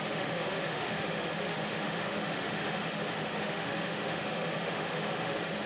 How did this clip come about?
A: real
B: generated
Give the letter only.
B